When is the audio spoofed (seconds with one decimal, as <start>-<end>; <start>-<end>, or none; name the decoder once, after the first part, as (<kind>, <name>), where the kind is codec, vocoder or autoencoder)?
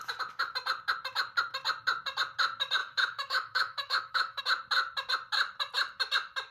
2.8-4.4 (autoencoder, DAC-VAE)